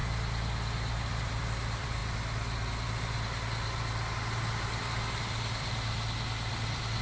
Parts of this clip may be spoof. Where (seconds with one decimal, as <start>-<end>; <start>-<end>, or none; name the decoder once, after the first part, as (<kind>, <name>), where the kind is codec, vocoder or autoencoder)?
0.9-2.0 (vocoder, BigVGAN v2); 4.8-7.0